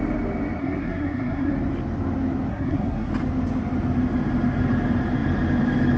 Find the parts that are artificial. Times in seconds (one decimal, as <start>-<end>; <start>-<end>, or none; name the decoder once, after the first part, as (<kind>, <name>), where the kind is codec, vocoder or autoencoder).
0.6-1.5 (codec, SNAC); 2.5-3.1